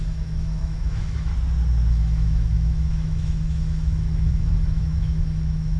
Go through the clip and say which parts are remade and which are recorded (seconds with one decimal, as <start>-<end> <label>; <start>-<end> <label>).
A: 0.0-1.3 remade; 1.3-1.9 recorded; 1.9-5.8 remade